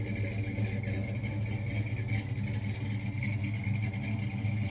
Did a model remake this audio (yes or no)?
no